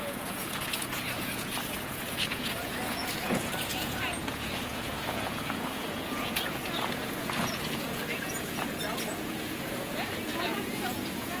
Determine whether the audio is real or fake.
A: fake